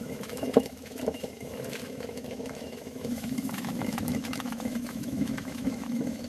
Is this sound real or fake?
fake